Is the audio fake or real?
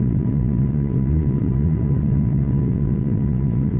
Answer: fake